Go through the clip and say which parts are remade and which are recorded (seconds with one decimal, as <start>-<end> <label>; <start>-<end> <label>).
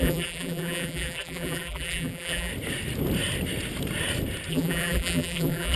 0.0-2.5 remade; 2.5-4.5 recorded; 4.5-5.8 remade